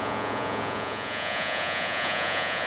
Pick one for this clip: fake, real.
fake